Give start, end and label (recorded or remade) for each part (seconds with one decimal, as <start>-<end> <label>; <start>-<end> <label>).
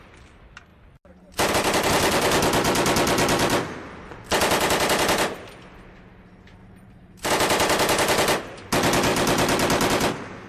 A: 0.0-6.6 recorded; 6.6-7.3 remade; 7.3-10.5 recorded